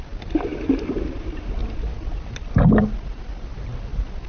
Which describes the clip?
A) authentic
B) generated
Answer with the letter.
A